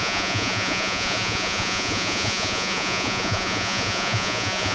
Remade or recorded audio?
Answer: remade